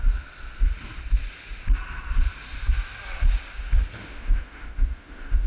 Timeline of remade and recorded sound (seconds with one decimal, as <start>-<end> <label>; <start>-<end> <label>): 0.0-4.0 recorded; 4.0-5.5 remade